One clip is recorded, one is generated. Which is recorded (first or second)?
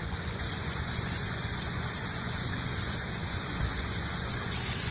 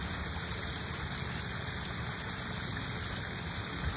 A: second